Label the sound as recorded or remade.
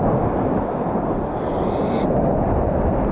recorded